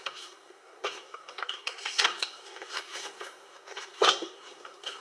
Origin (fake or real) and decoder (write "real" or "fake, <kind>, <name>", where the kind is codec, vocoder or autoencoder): fake, codec, SNAC